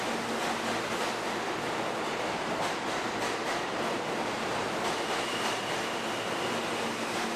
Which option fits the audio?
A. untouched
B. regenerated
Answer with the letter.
A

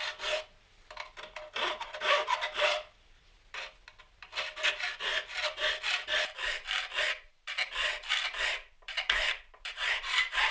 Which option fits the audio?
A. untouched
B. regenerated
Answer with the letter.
B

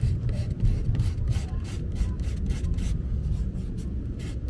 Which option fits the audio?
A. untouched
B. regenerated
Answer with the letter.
A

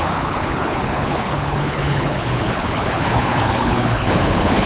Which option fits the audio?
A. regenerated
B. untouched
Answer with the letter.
A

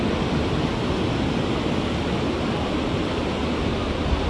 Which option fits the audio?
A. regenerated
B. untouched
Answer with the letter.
B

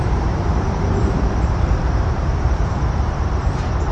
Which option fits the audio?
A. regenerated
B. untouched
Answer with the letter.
A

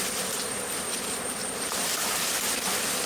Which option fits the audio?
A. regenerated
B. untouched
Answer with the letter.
B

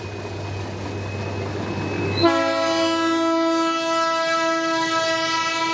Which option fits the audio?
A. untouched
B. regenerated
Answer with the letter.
A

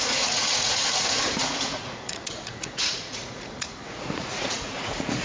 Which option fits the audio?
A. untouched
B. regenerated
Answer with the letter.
B